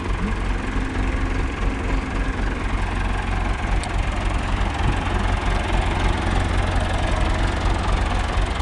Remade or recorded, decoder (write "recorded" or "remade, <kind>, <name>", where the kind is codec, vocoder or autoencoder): recorded